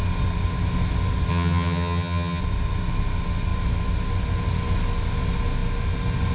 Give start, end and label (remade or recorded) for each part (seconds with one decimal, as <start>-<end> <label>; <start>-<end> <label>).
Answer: 0.0-1.3 recorded; 1.3-2.4 remade; 2.4-6.3 recorded